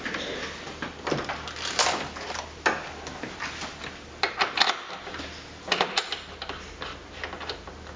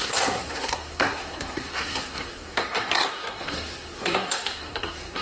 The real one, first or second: first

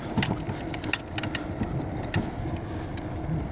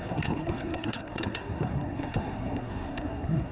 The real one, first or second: first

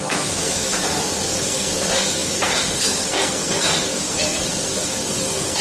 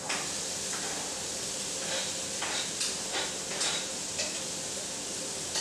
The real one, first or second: second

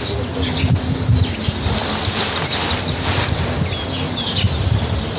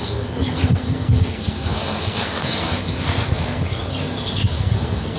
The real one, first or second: first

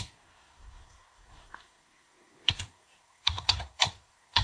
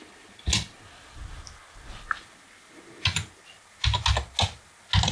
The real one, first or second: second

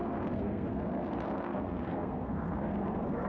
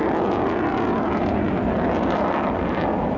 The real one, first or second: second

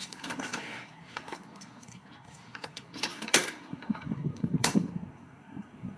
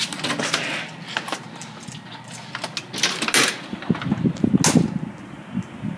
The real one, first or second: second